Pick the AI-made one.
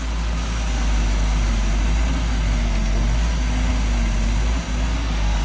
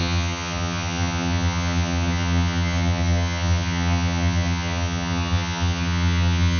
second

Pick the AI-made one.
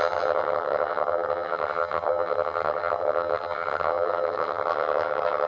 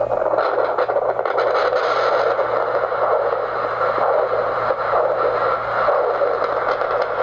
first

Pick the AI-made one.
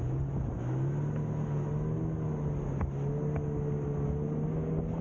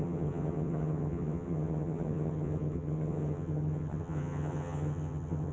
second